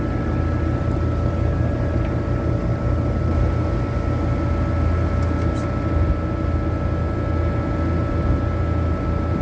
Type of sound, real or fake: real